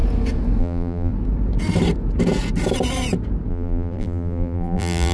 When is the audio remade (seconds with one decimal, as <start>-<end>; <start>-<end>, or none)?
0.6-1.1; 3.5-5.1